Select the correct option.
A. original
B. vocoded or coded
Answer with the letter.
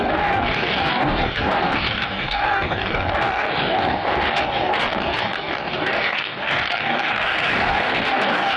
B